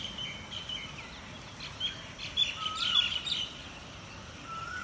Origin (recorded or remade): recorded